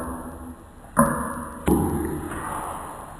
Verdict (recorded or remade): recorded